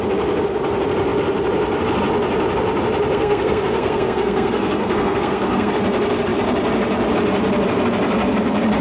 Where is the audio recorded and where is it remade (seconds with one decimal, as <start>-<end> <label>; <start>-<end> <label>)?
0.0-3.1 recorded; 3.1-5.7 remade; 5.7-8.8 recorded